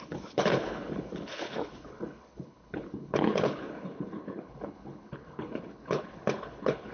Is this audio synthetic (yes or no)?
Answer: yes